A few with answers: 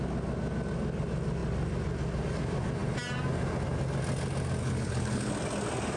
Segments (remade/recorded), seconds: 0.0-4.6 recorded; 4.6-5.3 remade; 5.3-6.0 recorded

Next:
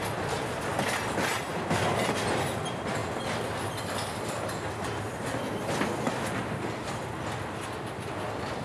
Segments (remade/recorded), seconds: 0.0-8.6 recorded

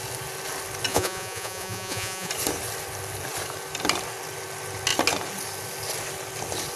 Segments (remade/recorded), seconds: 0.0-0.9 recorded; 0.9-2.3 remade; 2.3-6.8 recorded

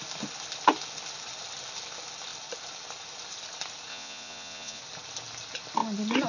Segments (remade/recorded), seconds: 0.0-3.9 recorded; 3.9-4.8 remade; 4.8-6.3 recorded